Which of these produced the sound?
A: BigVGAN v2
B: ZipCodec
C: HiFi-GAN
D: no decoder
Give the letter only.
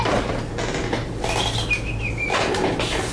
D